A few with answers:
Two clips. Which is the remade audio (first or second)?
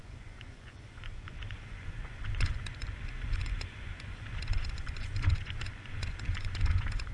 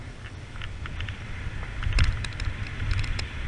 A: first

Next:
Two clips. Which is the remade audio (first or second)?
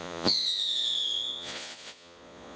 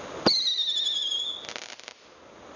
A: first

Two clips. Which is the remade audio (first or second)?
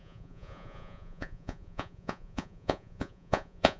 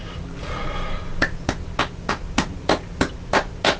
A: first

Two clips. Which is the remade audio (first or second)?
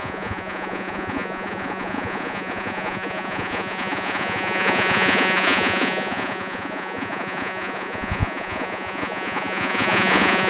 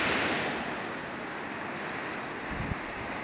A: first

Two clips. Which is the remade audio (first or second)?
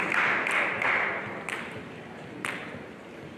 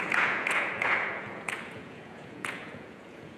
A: second